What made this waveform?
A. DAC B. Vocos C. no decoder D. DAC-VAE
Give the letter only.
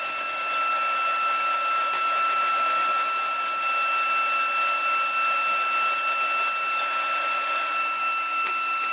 C